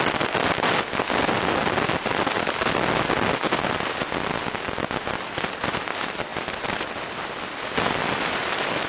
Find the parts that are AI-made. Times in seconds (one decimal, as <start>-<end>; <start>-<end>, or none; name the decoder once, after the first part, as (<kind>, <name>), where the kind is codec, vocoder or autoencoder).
none